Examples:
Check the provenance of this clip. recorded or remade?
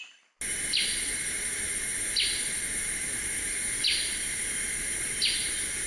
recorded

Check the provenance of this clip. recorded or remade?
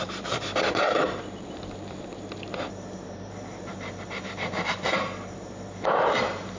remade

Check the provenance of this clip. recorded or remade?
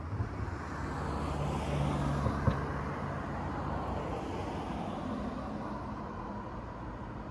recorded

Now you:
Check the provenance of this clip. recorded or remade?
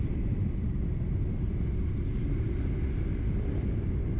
recorded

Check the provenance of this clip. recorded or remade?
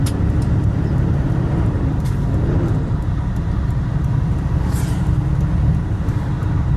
remade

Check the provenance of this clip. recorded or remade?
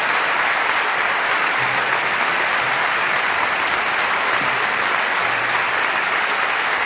remade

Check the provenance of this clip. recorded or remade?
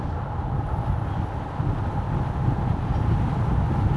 recorded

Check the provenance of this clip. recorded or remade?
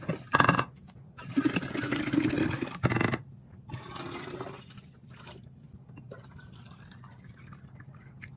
recorded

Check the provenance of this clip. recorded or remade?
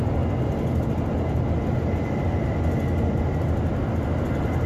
recorded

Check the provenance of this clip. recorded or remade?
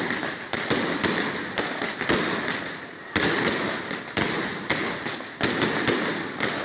recorded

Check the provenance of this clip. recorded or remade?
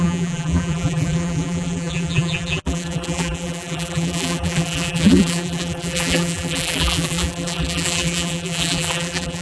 remade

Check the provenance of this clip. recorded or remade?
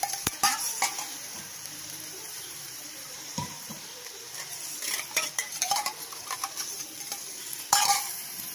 remade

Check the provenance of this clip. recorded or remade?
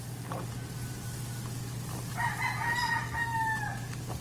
recorded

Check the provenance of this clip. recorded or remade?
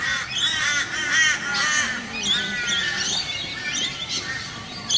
recorded